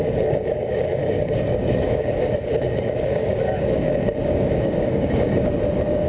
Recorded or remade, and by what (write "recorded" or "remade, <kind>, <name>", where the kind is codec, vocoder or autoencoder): remade, codec, DAC